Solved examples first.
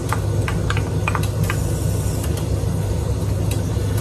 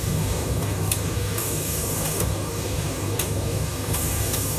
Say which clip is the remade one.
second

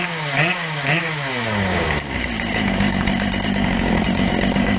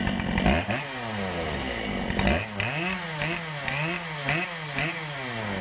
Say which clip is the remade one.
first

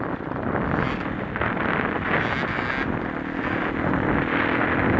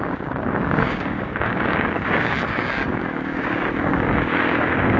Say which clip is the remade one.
second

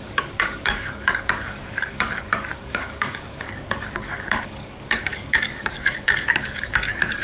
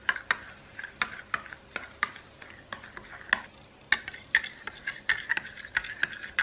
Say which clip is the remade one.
first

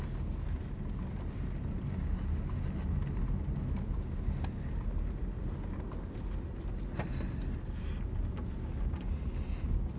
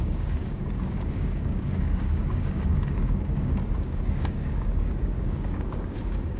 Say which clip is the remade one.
second